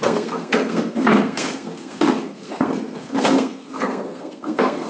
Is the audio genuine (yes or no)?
no